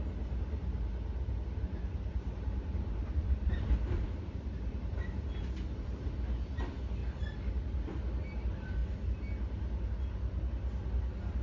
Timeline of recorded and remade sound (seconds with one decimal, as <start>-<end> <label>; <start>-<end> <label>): 0.0-1.6 recorded; 1.6-6.1 remade; 6.1-11.4 recorded